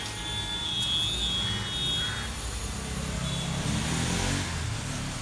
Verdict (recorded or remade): recorded